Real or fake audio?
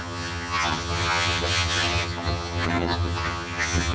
fake